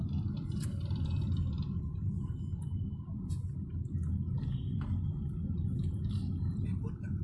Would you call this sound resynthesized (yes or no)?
no